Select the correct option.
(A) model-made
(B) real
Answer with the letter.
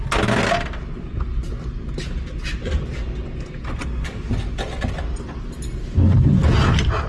B